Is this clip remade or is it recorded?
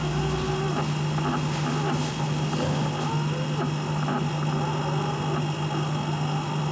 recorded